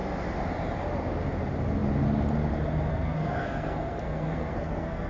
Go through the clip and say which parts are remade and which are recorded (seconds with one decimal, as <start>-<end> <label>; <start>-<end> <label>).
0.0-2.9 recorded; 2.9-5.1 remade